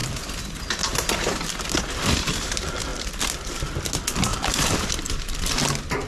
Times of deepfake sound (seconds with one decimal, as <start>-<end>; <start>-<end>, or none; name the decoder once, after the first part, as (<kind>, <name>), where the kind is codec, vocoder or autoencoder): 0.0-0.6 (vocoder, BigVGAN v2); 2.9-3.5; 4.3-5.5